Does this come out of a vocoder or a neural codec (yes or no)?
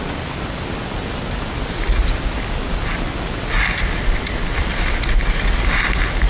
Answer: no